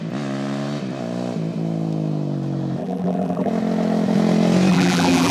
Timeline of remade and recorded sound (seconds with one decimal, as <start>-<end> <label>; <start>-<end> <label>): 0.0-2.8 recorded; 2.8-3.5 remade; 3.5-4.7 recorded; 4.7-5.3 remade